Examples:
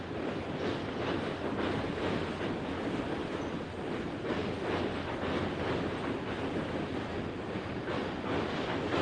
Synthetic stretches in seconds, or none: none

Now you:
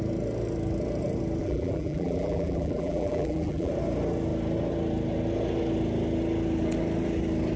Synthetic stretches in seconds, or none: 1.4-3.7 (vocoder, BigVGAN v2)

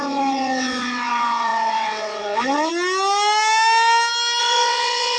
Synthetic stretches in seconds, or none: 0.0-2.7 (vocoder, WaveNeXt); 4.4-5.2

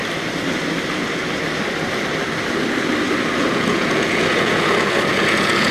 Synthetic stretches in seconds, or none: 3.4-5.7 (vocoder, Vocos)

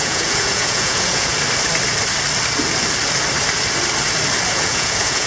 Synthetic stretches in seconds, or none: 0.0-1.3 (vocoder, Vocos); 4.5-5.3